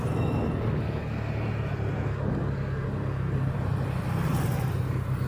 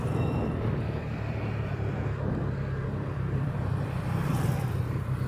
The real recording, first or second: first